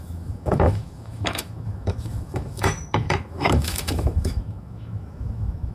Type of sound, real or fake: fake